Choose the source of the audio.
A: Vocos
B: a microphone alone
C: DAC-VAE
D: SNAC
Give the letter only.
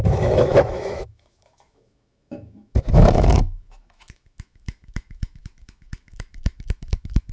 C